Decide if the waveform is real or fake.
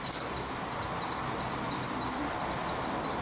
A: real